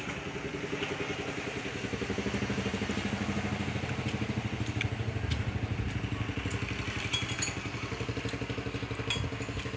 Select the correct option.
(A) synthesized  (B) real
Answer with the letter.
B